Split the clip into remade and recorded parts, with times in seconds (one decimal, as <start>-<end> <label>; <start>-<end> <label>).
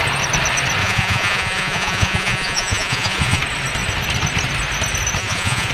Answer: 0.0-0.8 recorded; 0.8-3.4 remade; 3.4-5.2 recorded; 5.2-5.7 remade